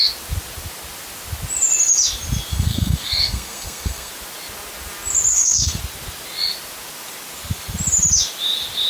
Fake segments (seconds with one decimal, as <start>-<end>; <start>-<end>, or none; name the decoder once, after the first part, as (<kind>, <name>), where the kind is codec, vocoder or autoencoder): 2.5-4.1 (codec, SNAC); 5.3-5.8